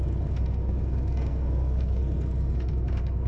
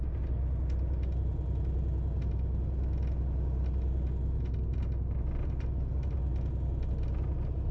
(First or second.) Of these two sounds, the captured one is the second